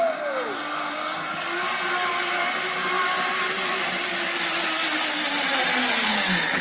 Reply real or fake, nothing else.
real